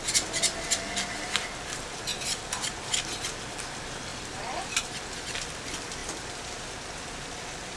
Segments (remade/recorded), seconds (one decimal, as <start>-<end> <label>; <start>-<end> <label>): 0.0-2.1 recorded; 2.1-3.0 remade; 3.0-4.1 recorded; 4.1-4.9 remade; 4.9-7.8 recorded